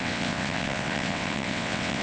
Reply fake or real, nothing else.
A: fake